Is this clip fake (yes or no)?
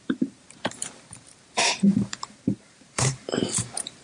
yes